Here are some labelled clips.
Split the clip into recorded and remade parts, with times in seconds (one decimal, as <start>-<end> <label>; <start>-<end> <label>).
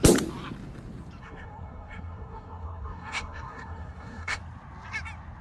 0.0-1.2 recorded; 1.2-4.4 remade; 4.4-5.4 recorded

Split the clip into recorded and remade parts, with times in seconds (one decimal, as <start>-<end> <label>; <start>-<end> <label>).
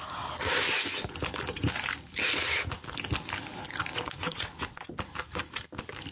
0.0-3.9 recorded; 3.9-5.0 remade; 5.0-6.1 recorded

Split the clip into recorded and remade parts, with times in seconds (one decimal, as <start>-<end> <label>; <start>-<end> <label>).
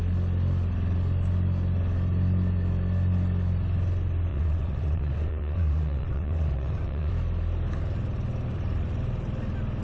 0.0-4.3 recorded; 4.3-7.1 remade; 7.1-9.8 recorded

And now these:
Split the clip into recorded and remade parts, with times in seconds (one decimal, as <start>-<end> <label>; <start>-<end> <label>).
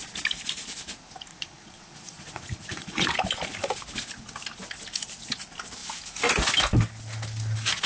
0.0-1.3 recorded; 1.3-3.1 remade; 3.1-7.9 recorded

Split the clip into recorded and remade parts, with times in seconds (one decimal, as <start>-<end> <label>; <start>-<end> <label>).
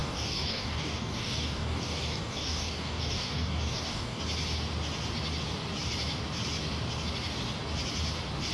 0.0-4.2 remade; 4.2-8.5 recorded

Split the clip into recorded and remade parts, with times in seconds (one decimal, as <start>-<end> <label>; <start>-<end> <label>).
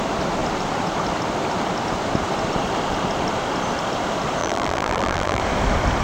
0.0-4.4 recorded; 4.4-5.4 remade; 5.4-6.0 recorded